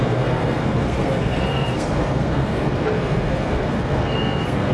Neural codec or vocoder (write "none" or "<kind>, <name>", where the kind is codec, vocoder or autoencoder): codec, SNAC